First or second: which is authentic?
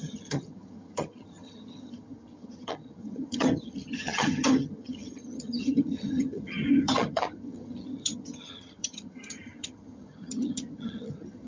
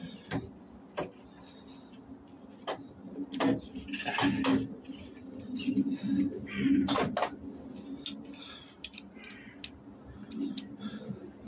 second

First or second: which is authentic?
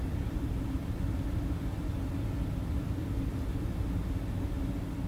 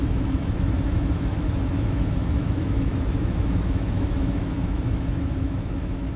first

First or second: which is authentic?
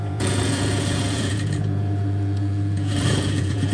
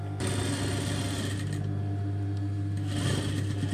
second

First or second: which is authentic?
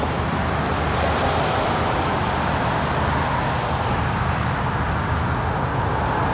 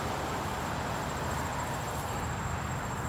first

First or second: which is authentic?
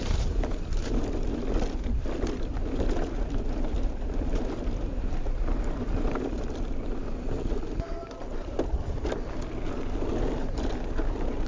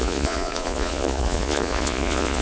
first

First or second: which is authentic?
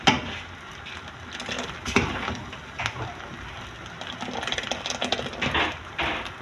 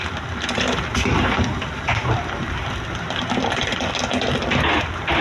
first